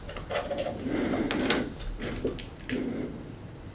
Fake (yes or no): no